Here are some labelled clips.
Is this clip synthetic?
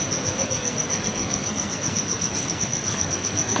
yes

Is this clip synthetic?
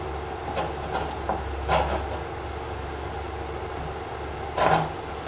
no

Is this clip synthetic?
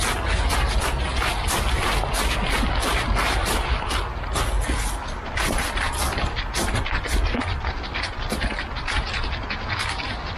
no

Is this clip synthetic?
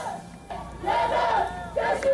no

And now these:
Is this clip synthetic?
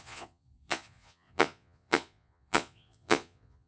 yes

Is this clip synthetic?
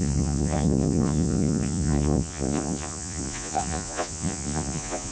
yes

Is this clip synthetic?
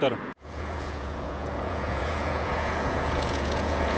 yes